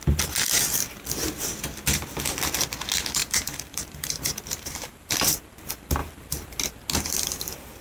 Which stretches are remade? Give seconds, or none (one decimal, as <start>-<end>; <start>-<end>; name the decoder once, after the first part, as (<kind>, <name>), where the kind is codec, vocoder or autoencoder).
3.2-5.4 (vocoder, BigVGAN v2); 6.0-6.6